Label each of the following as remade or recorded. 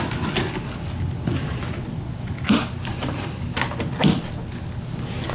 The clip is recorded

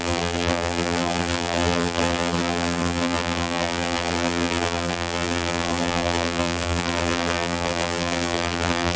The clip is remade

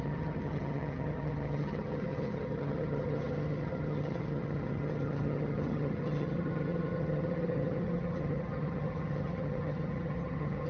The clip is remade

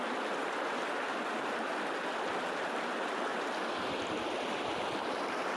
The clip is recorded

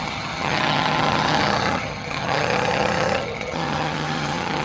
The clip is remade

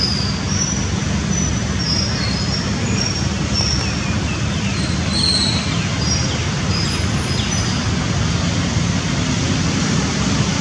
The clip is recorded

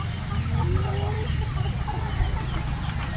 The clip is recorded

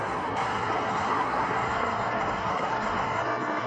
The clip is remade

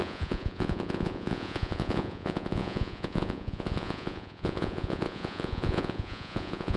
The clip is remade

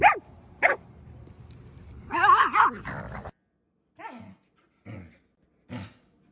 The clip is recorded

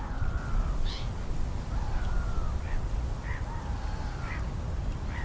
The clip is remade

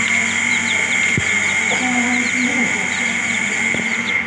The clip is recorded